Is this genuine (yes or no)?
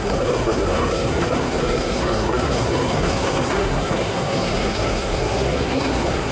no